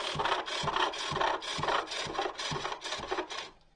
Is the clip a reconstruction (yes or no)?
no